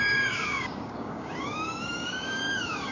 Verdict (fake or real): fake